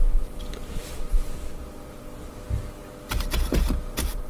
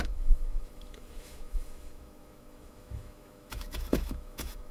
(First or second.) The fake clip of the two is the second